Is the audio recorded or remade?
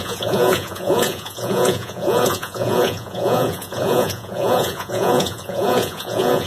remade